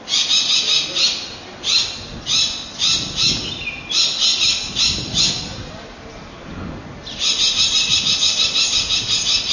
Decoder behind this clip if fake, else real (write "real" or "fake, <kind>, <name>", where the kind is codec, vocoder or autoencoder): real